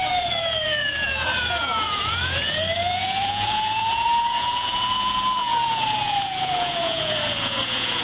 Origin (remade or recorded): remade